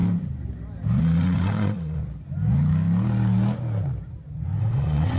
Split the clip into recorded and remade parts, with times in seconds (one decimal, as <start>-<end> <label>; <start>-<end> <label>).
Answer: 0.0-1.0 recorded; 1.0-2.0 remade; 2.0-4.6 recorded; 4.6-5.2 remade